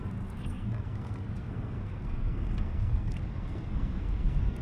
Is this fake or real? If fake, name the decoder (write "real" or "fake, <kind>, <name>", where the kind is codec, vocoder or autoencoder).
fake, codec, SNAC